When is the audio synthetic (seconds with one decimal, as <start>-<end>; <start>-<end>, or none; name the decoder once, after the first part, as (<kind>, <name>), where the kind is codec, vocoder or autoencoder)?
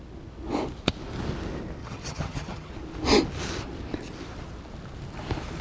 1.8-2.7 (vocoder, HiFi-GAN)